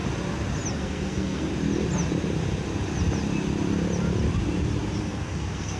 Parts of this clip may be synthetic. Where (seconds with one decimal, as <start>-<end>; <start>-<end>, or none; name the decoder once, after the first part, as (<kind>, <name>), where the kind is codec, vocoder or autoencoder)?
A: 0.7-1.5 (codec, SNAC); 5.0-5.8